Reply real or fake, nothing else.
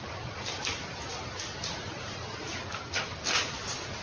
real